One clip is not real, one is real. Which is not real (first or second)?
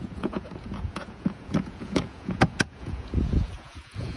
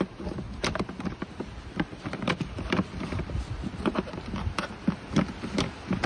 first